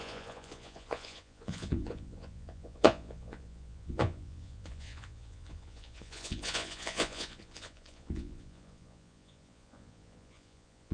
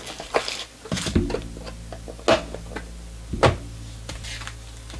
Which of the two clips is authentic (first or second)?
second